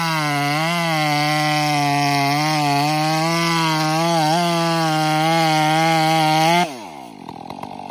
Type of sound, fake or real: real